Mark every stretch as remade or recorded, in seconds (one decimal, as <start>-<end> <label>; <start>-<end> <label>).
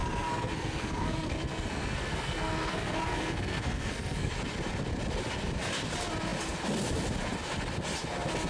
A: 0.0-4.3 remade; 4.3-8.5 recorded